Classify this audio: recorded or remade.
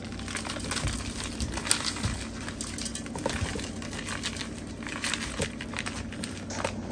recorded